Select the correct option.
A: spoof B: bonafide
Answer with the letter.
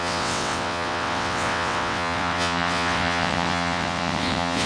A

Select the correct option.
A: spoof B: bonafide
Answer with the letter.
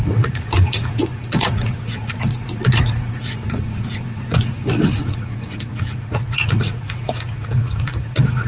A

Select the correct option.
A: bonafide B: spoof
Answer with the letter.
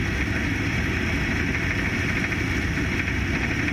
A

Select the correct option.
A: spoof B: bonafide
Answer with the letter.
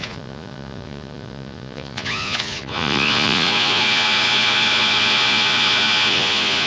A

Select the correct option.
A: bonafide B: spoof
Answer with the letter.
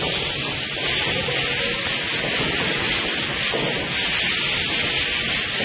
A